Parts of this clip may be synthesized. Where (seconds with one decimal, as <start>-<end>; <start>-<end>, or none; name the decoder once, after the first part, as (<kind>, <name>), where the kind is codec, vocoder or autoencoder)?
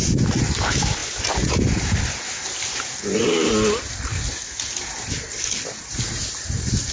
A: none